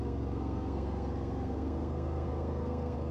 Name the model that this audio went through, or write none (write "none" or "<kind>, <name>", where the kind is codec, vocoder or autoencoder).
codec, SNAC